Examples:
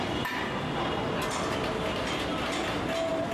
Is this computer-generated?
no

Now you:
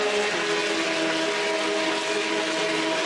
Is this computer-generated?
no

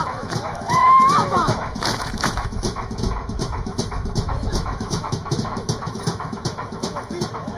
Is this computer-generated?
yes